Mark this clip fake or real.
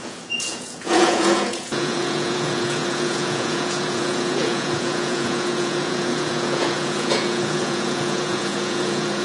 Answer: fake